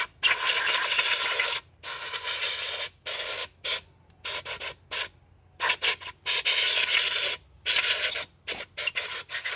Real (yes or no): yes